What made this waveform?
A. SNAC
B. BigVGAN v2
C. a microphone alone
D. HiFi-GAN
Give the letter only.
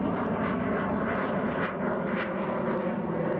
C